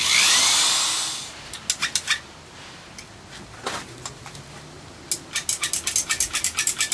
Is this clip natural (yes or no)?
yes